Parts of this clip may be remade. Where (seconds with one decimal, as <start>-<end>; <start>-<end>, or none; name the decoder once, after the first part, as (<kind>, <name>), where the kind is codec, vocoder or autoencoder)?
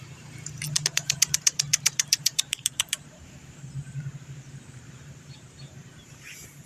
0.0-6.7 (vocoder, BigVGAN v2)